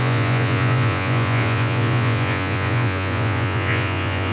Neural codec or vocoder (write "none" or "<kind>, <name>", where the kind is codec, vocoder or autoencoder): vocoder, Vocos